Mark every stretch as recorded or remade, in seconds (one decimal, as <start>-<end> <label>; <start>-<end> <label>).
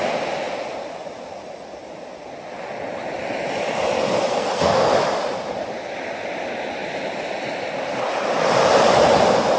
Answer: 0.0-4.3 recorded; 4.3-4.9 remade; 4.9-9.6 recorded